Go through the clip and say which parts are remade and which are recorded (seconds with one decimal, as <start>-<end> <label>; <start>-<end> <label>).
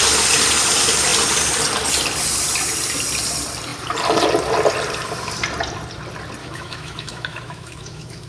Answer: 0.0-6.4 recorded; 6.4-8.3 remade